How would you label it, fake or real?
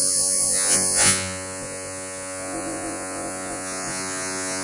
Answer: fake